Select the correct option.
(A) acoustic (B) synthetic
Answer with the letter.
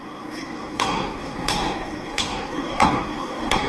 B